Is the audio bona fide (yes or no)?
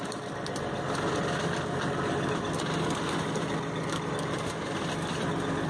yes